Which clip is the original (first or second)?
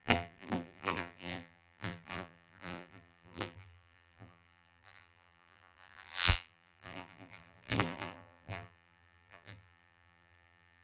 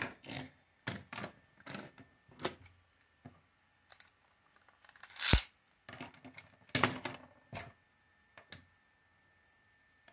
second